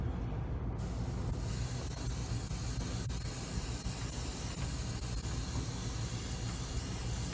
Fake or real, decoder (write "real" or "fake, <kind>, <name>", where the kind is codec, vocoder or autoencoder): real